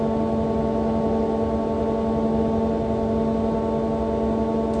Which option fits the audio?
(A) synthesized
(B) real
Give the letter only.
B